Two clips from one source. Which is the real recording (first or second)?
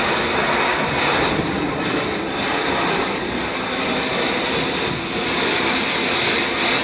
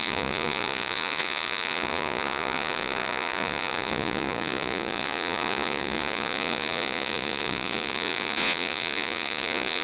first